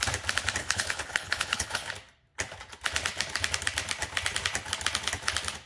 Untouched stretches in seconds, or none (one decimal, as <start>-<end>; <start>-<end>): 0.0-0.6; 1.9-5.7